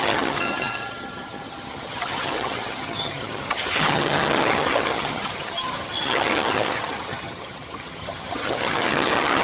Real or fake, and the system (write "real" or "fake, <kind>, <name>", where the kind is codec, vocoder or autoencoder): fake, vocoder, HiFi-GAN